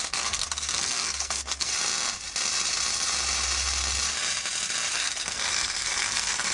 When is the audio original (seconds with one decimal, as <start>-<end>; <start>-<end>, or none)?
1.7-4.9